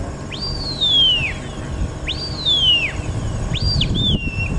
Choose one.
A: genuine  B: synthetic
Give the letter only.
A